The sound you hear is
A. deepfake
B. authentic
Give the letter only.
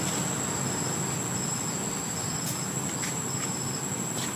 B